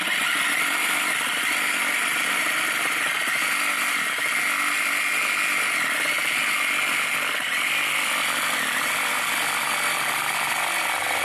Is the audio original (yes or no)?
yes